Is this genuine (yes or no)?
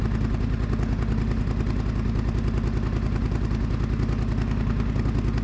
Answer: no